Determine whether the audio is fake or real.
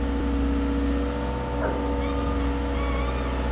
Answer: real